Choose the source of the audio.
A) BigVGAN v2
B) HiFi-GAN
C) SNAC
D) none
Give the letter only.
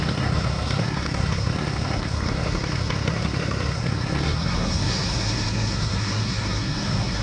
C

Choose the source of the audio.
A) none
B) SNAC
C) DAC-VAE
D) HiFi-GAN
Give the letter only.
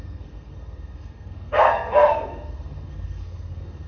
B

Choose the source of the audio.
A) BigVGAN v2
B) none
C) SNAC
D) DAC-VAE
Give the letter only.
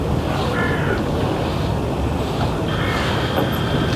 B